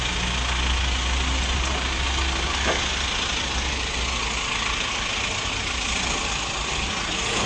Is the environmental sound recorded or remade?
recorded